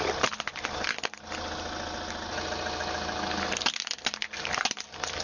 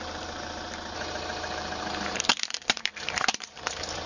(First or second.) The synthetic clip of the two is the second